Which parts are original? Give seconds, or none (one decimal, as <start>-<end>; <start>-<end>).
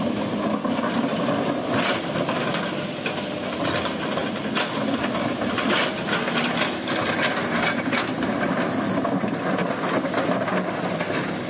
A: 0.0-11.5